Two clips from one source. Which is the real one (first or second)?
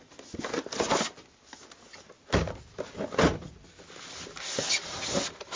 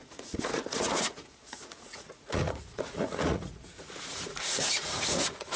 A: first